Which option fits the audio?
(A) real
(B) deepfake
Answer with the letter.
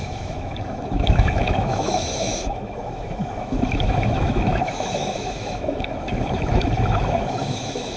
B